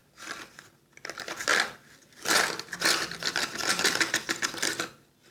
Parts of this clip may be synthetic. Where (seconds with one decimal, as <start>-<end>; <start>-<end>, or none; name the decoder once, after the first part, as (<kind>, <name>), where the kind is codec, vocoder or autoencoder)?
none